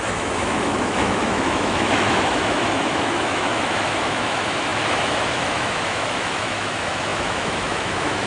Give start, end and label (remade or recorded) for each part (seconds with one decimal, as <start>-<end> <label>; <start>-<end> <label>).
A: 0.0-8.3 remade